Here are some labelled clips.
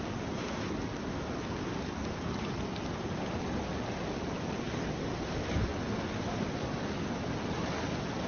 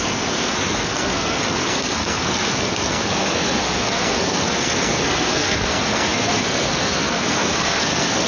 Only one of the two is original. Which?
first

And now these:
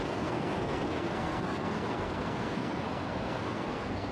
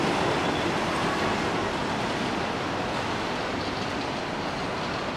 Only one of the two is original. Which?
second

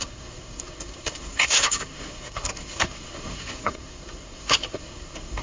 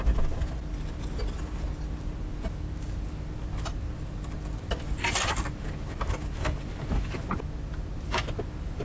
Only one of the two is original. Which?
second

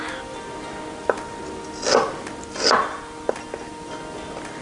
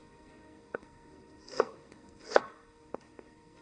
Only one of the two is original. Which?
first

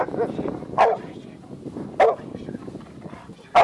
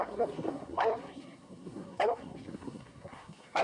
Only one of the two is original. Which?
first